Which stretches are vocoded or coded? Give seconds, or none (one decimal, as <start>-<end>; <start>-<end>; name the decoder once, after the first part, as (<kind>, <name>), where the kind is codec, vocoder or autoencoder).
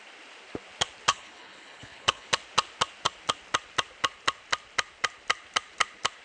1.1-2.3 (codec, HILCodec)